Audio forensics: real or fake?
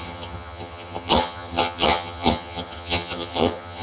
fake